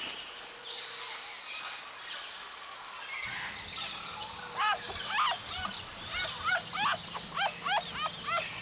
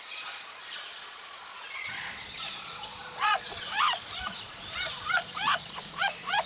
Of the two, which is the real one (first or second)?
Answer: first